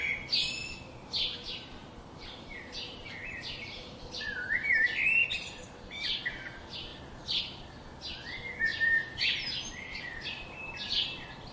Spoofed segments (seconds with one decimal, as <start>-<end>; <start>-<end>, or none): 0.6-4.2; 5.2-6.2; 8.7-10.0

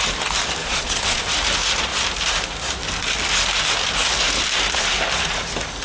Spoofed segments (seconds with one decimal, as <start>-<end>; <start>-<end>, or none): 0.6-1.2